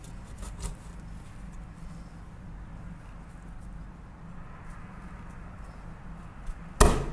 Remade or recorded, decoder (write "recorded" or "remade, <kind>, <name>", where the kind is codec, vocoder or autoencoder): recorded